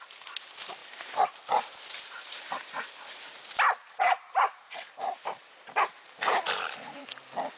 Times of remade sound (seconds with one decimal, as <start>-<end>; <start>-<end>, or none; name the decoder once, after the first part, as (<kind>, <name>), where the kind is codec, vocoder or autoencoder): 0.8-2.9 (vocoder, BigVGAN v2); 3.7-7.1